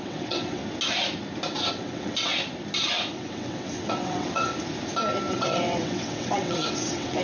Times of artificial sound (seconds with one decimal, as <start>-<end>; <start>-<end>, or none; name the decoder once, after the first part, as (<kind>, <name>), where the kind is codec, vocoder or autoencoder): 0.0-0.6 (vocoder, WaveNeXt); 1.7-2.3; 3.1-4.5; 5.3-7.2